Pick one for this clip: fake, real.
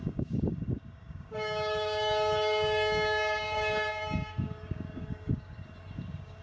fake